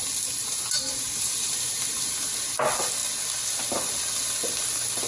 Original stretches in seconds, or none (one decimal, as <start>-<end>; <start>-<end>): 0.0-5.1